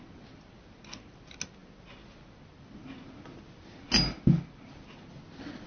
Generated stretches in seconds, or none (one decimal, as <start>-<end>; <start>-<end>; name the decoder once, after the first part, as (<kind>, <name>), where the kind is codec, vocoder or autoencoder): none